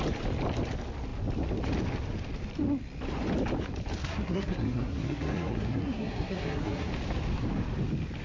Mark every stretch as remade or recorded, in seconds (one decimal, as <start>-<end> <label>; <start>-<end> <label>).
0.0-4.0 recorded; 4.0-6.9 remade; 6.9-8.2 recorded